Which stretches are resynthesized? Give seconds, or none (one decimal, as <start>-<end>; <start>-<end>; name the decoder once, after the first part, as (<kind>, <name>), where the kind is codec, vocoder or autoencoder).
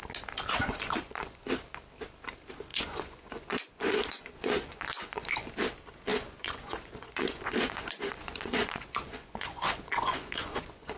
0.6-1.5 (vocoder, Vocos); 2.7-5.5; 6.1-11.0